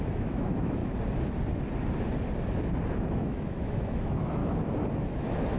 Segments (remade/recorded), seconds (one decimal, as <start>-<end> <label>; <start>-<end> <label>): 0.0-0.8 remade; 0.8-3.1 recorded; 3.1-4.4 remade; 4.4-5.0 recorded; 5.0-5.6 remade